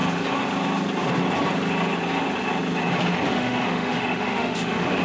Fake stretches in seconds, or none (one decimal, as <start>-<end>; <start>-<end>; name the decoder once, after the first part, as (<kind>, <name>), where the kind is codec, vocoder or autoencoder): 3.3-5.0 (autoencoder, DAC-VAE)